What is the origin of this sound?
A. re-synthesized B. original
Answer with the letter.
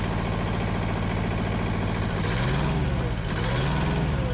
B